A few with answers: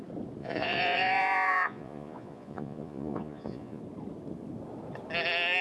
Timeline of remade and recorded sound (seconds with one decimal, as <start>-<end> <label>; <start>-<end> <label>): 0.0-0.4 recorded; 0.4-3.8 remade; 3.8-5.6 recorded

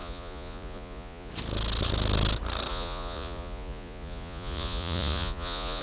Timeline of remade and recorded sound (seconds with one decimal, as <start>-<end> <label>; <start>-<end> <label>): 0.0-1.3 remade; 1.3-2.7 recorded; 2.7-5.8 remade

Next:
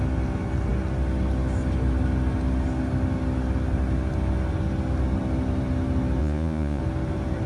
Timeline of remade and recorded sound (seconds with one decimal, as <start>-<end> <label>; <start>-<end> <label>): 0.0-6.2 recorded; 6.2-6.8 remade; 6.8-7.5 recorded